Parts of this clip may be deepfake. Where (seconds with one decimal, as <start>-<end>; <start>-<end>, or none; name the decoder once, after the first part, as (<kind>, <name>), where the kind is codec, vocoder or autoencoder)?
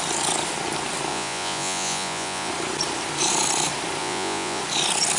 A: 1.1-2.5 (vocoder, Vocos); 4.0-4.6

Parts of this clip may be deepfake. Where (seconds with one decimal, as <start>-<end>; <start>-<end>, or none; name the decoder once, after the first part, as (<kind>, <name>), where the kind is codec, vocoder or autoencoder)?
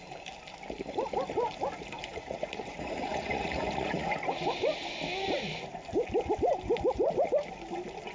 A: 2.1-4.2 (vocoder, Vocos)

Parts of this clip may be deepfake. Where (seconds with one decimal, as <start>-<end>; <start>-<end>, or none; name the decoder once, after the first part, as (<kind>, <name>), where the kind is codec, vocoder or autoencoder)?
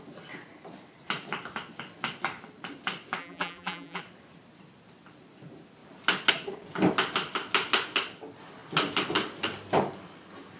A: 3.2-4.0 (vocoder, BigVGAN v2)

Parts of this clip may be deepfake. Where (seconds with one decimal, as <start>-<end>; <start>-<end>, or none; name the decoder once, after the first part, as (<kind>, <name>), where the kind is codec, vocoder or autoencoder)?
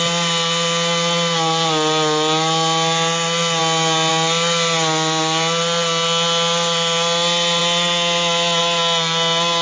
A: none